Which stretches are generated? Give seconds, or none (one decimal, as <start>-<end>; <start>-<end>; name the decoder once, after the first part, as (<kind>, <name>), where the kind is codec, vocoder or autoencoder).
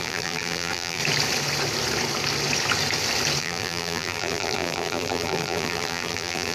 0.0-1.0 (vocoder, BigVGAN v2); 3.4-6.5